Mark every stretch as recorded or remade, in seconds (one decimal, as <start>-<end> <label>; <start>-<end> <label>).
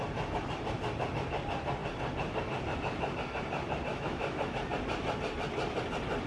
0.0-3.9 recorded; 3.9-4.6 remade; 4.6-6.3 recorded